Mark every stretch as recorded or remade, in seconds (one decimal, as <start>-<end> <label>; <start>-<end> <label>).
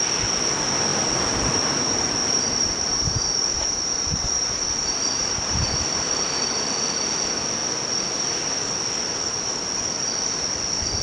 0.0-2.2 recorded; 2.2-6.4 remade; 6.4-11.0 recorded